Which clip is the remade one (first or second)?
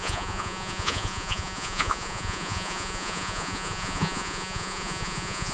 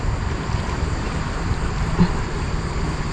first